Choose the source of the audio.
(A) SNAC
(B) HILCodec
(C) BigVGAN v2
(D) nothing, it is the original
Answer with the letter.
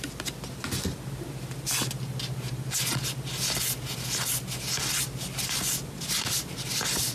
D